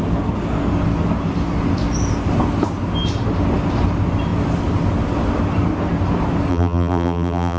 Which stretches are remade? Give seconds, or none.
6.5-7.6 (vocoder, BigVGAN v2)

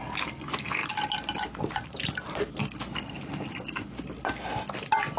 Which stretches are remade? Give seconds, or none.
none

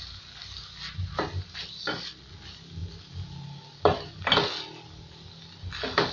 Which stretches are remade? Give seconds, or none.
none

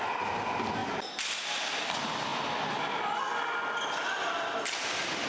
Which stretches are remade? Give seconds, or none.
0.0-0.8 (vocoder, BigVGAN v2); 1.8-2.3; 3.3-5.3

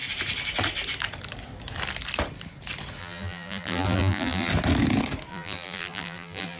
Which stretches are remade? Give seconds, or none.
3.0-4.5 (vocoder, BigVGAN v2); 5.3-6.6

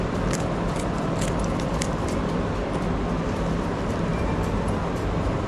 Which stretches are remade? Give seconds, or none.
0.0-5.5 (vocoder, BigVGAN v2)